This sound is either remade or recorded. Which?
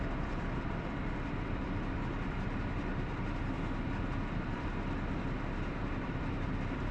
remade